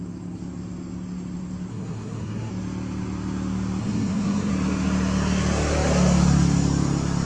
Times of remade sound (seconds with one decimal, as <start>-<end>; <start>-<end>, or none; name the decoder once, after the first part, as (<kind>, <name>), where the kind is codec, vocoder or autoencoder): 1.7-2.5 (codec, SNAC); 3.8-4.5